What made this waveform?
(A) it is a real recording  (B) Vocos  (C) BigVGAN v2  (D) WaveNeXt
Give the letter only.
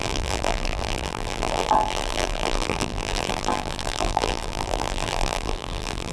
C